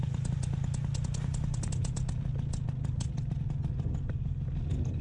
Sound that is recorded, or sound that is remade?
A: recorded